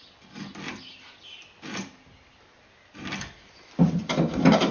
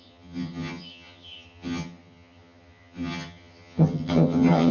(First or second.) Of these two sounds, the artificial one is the second